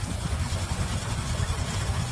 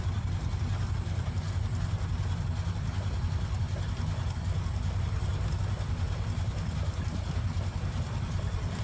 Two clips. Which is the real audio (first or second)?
second